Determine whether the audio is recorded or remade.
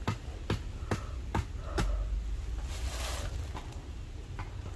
recorded